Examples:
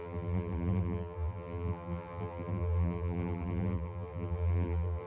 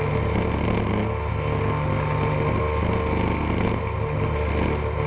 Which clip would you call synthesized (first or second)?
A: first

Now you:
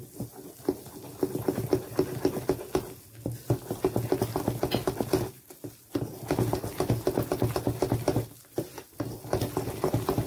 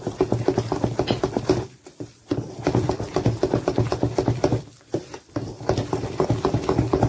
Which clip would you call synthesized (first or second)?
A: second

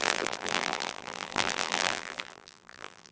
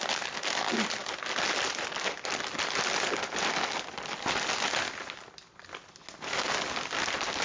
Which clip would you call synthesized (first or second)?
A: first